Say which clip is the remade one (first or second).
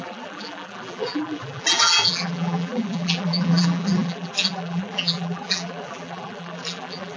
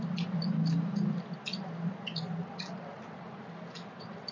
first